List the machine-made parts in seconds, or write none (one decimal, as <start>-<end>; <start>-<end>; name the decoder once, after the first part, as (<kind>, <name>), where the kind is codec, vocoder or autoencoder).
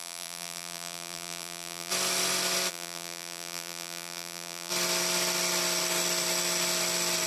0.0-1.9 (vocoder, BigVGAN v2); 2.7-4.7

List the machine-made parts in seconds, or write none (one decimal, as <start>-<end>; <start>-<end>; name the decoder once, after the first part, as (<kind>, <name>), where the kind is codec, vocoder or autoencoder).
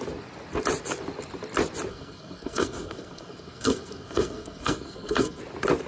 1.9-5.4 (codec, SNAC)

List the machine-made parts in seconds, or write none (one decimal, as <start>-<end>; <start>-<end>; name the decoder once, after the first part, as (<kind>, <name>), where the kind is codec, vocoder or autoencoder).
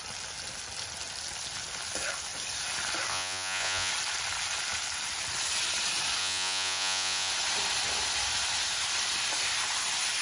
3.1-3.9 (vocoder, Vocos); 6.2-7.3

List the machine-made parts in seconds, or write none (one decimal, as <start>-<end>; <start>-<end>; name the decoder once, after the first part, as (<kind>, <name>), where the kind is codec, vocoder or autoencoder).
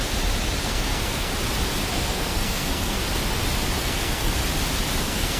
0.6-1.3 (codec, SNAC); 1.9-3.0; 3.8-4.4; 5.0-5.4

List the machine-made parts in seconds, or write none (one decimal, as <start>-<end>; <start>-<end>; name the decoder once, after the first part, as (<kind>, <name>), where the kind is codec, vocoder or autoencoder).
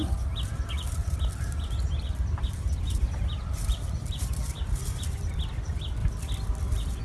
none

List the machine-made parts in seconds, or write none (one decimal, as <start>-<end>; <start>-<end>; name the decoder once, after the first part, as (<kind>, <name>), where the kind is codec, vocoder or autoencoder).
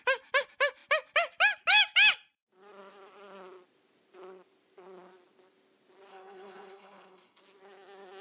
6.1-7.4 (codec, HILCodec)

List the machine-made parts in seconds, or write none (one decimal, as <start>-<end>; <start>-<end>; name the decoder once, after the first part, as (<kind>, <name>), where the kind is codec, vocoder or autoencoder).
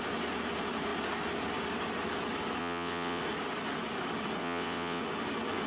2.6-3.2 (vocoder, WaveNeXt); 4.4-5.0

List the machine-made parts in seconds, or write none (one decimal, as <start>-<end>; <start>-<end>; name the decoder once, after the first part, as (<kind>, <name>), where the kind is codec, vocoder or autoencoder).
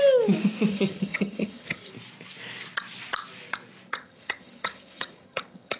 0.7-1.9 (vocoder, HiFi-GAN); 3.9-5.8